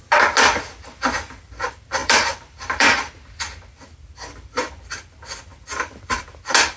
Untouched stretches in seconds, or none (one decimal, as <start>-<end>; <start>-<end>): 0.0-2.0; 3.2-5.5; 6.2-6.8